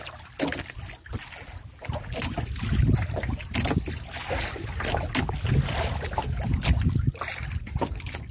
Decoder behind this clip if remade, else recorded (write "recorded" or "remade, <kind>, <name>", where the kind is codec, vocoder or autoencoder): recorded